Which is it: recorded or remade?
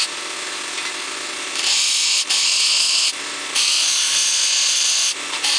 recorded